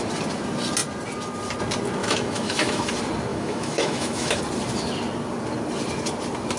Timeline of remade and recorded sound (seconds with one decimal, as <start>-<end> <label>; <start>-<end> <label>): 0.0-2.0 recorded; 2.0-2.9 remade; 2.9-3.3 recorded; 3.3-4.4 remade; 4.4-6.6 recorded